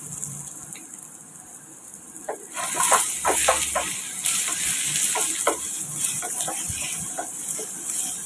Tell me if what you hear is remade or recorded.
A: recorded